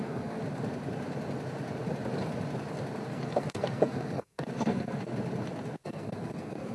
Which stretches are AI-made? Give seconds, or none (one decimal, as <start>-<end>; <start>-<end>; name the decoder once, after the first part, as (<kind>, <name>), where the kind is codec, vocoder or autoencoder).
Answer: 0.0-0.4 (codec, SNAC); 3.1-5.1; 5.8-6.7